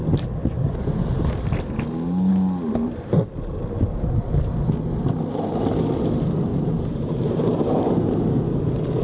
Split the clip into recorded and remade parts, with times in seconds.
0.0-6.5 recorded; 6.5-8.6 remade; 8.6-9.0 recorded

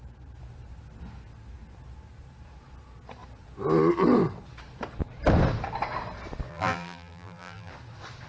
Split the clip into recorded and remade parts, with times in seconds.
0.0-6.5 recorded; 6.5-7.7 remade; 7.7-8.3 recorded

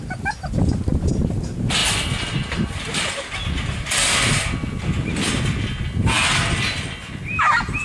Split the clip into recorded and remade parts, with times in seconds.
0.0-7.8 recorded

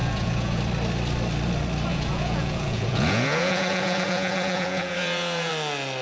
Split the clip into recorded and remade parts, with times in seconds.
0.0-0.6 remade; 0.6-1.9 recorded; 1.9-5.5 remade; 5.5-6.0 recorded

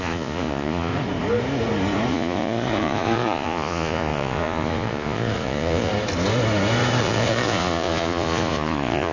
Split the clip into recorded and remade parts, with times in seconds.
0.0-0.9 remade; 0.9-2.1 recorded; 2.1-5.9 remade; 5.9-7.0 recorded; 7.0-9.1 remade

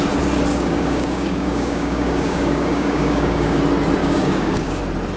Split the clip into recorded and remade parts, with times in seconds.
0.0-0.5 recorded; 0.5-3.6 remade; 3.6-4.0 recorded; 4.0-4.8 remade; 4.8-5.2 recorded